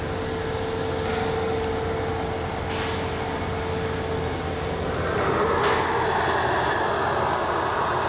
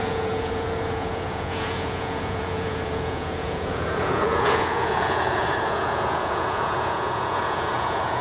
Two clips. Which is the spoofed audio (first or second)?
second